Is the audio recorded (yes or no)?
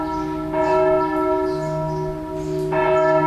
yes